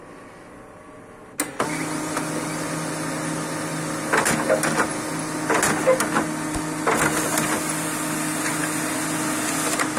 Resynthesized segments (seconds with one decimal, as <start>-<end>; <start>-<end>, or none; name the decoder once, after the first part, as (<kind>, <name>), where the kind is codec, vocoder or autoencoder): none